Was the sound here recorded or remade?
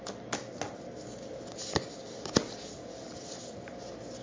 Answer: recorded